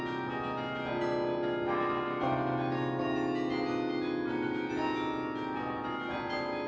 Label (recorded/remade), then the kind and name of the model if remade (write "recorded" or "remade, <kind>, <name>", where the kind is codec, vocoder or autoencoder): recorded